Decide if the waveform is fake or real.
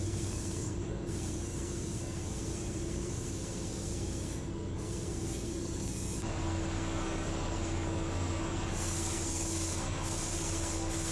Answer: fake